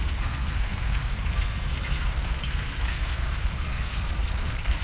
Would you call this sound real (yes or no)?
no